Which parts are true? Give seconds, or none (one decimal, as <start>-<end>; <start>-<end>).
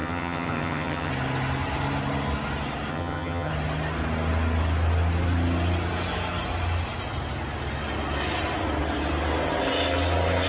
1.1-2.9; 3.5-10.5